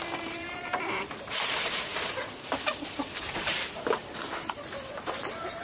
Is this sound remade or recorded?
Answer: remade